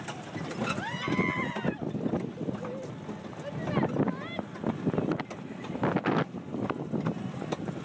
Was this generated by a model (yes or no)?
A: no